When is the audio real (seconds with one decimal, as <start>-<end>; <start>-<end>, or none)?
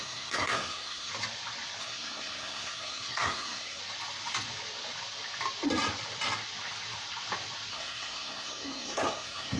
1.1-1.8; 3.8-7.7